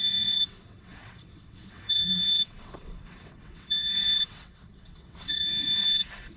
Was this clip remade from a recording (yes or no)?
yes